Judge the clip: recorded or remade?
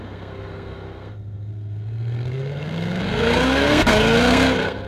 remade